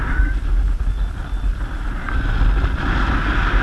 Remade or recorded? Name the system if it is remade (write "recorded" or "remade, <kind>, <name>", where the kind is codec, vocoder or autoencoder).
recorded